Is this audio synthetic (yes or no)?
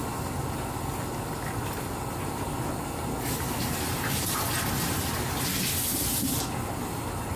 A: no